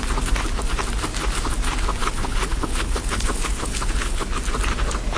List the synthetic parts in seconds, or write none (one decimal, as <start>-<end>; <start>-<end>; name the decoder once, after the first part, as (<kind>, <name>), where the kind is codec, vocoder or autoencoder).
2.0-4.3 (codec, HILCodec)